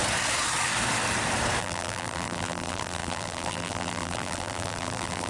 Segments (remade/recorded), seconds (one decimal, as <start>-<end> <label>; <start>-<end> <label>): 0.0-1.6 recorded; 1.6-5.3 remade